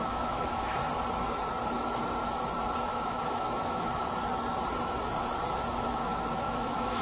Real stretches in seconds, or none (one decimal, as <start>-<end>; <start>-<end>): 0.8-2.9; 4.0-5.5